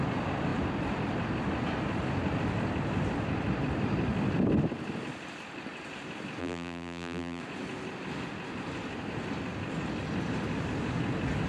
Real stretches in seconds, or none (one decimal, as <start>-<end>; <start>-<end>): 0.0-6.4; 7.4-11.5